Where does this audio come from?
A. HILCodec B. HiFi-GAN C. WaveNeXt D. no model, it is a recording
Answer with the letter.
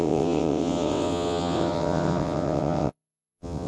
C